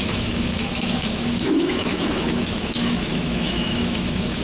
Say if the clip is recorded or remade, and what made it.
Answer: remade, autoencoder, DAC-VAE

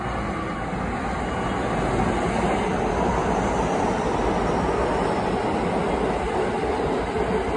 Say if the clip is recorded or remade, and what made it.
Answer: recorded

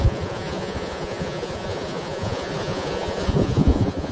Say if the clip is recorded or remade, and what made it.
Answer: remade, vocoder, Vocos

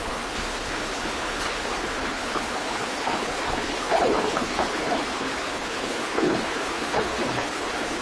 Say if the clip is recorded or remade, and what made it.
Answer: remade, codec, HILCodec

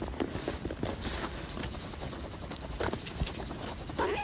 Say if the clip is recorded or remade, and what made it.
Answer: recorded